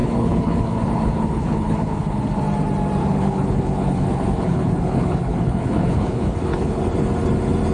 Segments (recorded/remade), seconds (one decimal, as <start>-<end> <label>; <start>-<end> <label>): 0.0-2.4 remade; 2.4-3.0 recorded; 3.0-6.8 remade; 6.8-7.7 recorded